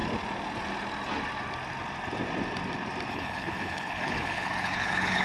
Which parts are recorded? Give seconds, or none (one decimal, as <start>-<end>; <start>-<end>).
0.0-3.1